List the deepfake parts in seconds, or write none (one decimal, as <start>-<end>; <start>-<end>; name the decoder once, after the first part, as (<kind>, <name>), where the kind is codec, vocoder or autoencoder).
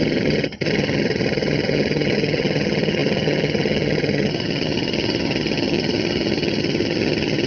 0.0-7.5 (vocoder, HiFi-GAN)